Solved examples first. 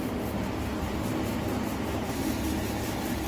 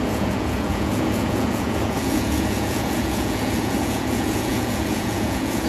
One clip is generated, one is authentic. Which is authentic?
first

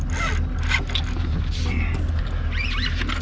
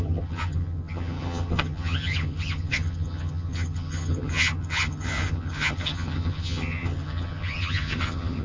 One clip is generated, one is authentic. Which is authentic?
first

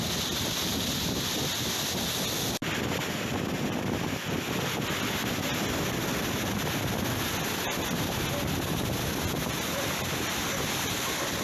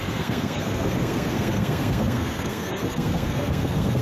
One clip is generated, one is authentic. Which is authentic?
first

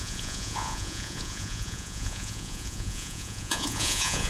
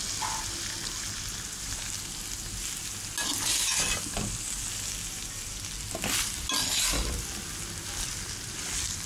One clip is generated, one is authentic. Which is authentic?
second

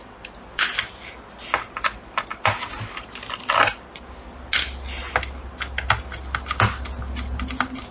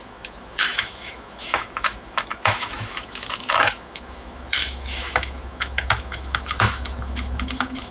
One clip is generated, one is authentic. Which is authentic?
first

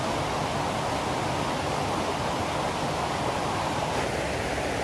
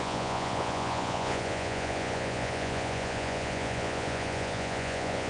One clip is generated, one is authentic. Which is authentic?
first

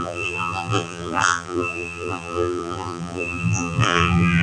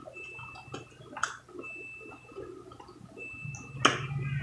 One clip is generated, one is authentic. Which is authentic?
second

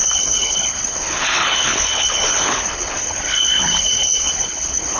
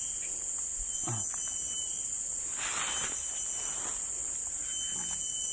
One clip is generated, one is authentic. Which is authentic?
second